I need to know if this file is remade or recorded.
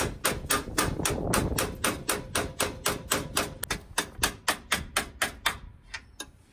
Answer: recorded